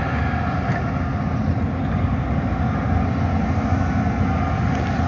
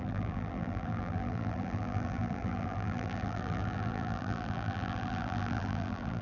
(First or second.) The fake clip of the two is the second